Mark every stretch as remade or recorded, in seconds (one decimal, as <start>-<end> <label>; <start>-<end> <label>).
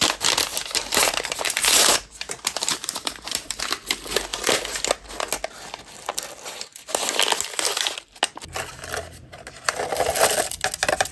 0.0-0.5 recorded; 0.5-3.6 remade; 3.6-11.1 recorded